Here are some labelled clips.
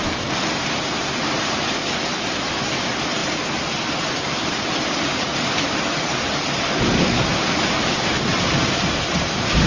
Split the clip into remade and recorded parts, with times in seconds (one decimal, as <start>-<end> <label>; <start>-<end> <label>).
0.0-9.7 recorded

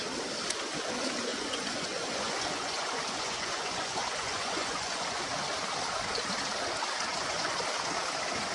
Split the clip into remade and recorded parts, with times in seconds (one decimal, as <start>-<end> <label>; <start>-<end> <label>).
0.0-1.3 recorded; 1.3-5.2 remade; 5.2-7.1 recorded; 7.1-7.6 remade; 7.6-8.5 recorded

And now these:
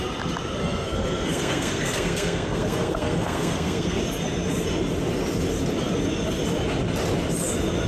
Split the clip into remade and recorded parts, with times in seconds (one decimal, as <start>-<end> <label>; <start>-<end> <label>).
0.0-0.6 recorded; 0.6-4.0 remade; 4.0-7.9 recorded

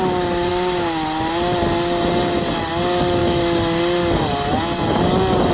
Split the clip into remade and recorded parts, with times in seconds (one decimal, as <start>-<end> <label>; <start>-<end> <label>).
0.0-5.5 recorded

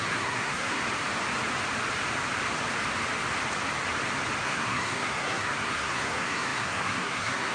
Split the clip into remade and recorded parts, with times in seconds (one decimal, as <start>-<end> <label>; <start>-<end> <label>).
0.0-0.8 remade; 0.8-4.4 recorded; 4.4-7.5 remade

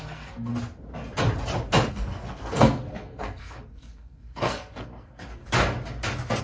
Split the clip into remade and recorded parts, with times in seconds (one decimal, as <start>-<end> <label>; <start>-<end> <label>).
0.0-0.5 remade; 0.5-1.9 recorded; 1.9-5.4 remade; 5.4-6.4 recorded